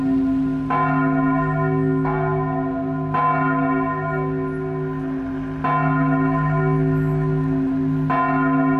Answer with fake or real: real